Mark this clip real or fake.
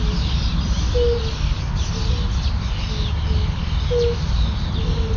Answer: real